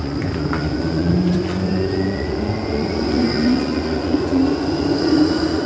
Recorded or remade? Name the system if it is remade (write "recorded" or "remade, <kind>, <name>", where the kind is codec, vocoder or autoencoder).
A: remade, vocoder, Vocos